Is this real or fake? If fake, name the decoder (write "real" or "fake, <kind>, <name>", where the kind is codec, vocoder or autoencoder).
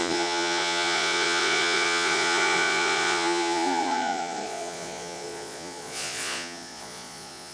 fake, vocoder, Vocos